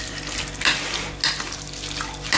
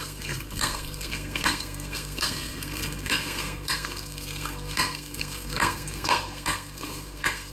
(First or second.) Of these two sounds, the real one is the first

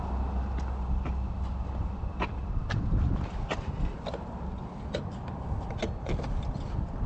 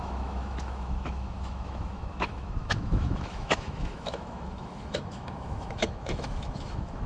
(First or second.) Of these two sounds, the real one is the first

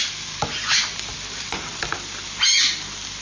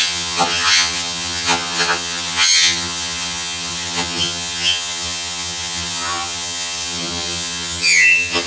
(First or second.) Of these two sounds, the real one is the first